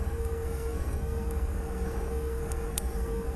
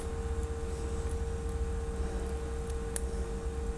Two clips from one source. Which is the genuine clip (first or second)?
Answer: second